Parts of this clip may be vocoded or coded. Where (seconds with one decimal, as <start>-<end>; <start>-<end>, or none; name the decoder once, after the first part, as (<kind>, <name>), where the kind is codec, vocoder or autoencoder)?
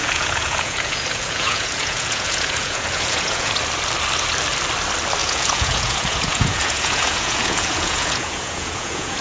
0.0-3.5 (vocoder, Vocos); 5.2-9.2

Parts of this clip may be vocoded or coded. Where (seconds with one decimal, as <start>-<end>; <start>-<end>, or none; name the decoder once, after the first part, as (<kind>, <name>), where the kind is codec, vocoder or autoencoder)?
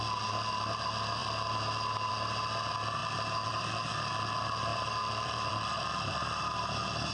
1.2-2.1 (vocoder, BigVGAN v2); 4.7-6.5